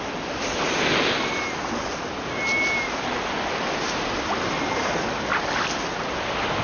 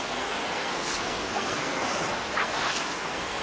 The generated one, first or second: second